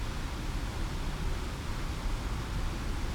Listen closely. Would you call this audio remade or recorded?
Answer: recorded